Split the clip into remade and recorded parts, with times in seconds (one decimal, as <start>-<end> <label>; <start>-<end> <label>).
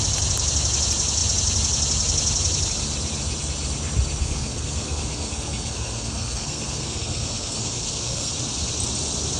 0.0-4.2 recorded; 4.2-8.3 remade; 8.3-9.4 recorded